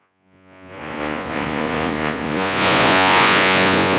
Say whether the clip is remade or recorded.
remade